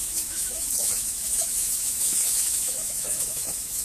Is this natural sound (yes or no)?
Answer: no